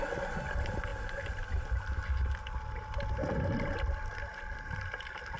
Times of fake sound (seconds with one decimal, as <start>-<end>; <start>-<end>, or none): none